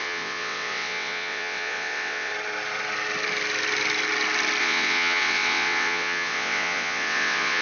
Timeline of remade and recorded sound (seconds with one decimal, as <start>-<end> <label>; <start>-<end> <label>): 0.0-2.3 remade; 2.3-4.6 recorded; 4.6-7.6 remade